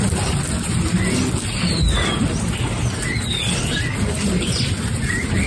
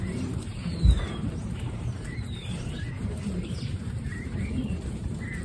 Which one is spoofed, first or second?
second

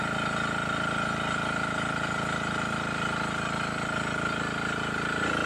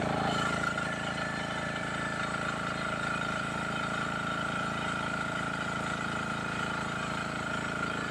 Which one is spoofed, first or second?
second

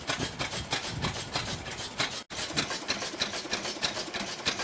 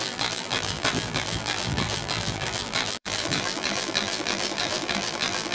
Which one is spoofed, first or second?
second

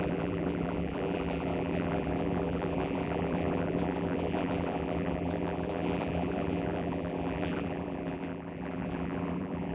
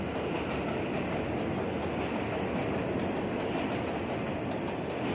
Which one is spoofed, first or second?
first